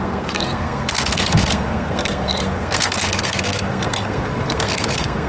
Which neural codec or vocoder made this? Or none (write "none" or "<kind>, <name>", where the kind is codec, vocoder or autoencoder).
codec, SNAC